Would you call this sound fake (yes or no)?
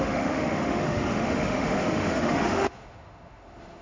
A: yes